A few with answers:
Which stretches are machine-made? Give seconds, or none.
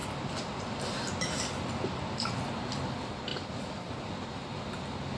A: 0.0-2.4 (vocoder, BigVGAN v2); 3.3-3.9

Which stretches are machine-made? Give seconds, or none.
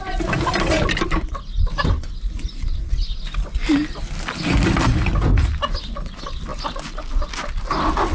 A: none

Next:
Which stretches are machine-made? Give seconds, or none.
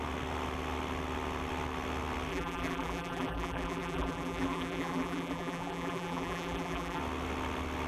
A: 2.3-7.0 (vocoder, BigVGAN v2)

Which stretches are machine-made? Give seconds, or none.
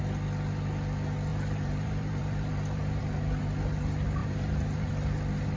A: 1.3-3.0 (vocoder, BigVGAN v2); 4.2-4.9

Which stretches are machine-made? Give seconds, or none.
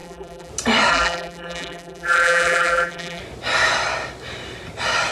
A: 0.0-0.5 (vocoder, BigVGAN v2); 0.9-3.2